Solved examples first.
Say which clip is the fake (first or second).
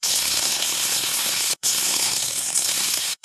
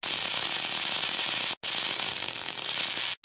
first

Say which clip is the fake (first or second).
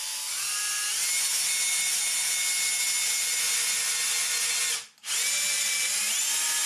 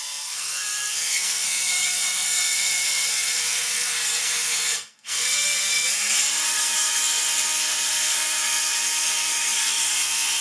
second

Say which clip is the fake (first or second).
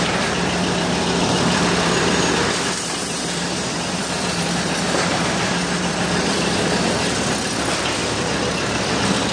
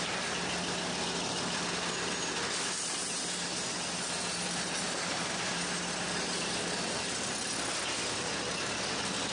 first